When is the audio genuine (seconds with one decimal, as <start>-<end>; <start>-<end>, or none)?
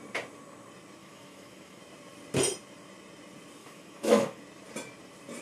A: 0.0-1.0; 1.8-3.6; 4.4-5.4